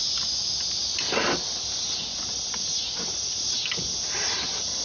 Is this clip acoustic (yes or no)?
yes